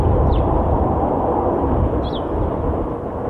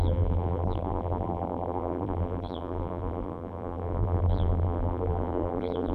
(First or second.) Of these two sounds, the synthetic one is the second